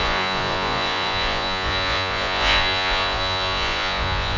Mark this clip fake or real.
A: fake